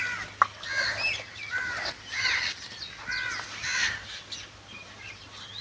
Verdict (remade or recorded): recorded